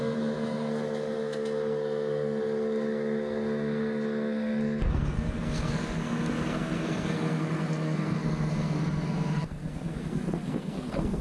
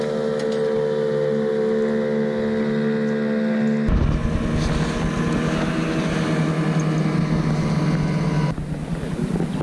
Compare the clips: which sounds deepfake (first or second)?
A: first